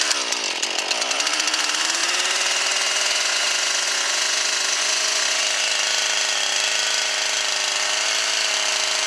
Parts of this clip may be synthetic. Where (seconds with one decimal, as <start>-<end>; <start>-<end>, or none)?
2.0-5.4